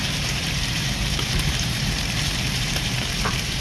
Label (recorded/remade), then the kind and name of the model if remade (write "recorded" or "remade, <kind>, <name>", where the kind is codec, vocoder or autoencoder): remade, vocoder, BigVGAN v2